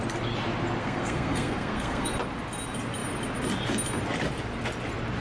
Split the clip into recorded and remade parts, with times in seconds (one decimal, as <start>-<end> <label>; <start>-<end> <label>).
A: 0.0-0.8 recorded; 0.8-2.1 remade; 2.1-5.2 recorded